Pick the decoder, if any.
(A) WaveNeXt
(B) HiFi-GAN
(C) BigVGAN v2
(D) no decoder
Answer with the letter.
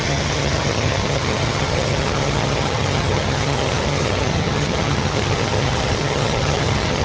B